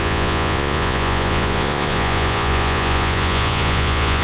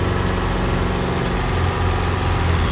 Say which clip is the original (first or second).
second